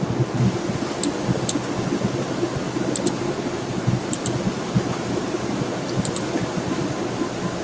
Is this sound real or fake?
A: real